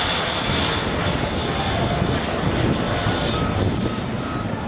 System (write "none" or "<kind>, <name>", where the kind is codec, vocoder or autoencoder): none